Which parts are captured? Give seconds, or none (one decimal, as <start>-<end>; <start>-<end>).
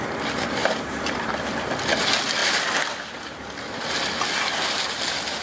0.0-0.6; 1.3-5.4